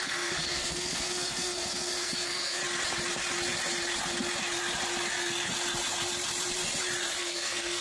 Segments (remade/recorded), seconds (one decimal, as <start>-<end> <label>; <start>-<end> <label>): 0.0-2.6 remade; 2.6-7.2 recorded; 7.2-7.8 remade